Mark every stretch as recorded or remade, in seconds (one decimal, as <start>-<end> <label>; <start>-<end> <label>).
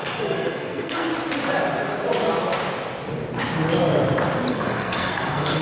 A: 0.0-1.1 remade; 1.1-4.5 recorded; 4.5-5.6 remade